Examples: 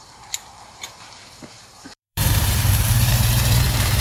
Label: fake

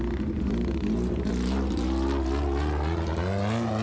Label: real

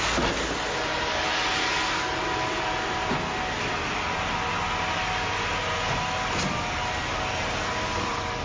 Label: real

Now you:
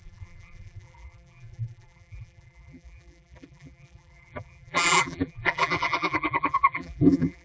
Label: fake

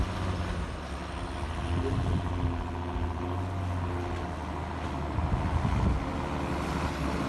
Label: real